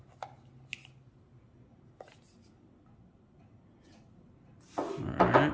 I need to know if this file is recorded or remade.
recorded